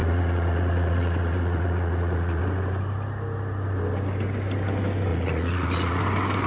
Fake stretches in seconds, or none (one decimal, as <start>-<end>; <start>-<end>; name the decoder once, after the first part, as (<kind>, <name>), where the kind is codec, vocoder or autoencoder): 0.0-2.4 (vocoder, Vocos); 5.1-6.0